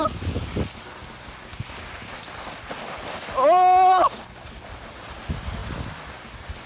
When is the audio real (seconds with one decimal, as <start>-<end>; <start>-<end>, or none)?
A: 0.0-6.7